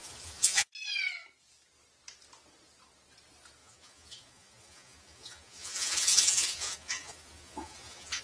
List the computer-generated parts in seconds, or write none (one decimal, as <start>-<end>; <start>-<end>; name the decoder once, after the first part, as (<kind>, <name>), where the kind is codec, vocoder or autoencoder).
0.0-0.7 (vocoder, Vocos); 3.6-8.2